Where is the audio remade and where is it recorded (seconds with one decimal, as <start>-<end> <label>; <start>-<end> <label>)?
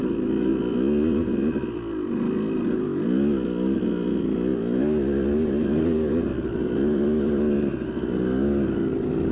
0.0-9.3 recorded